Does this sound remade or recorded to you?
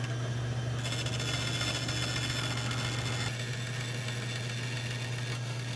recorded